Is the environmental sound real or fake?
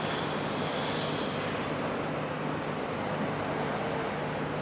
real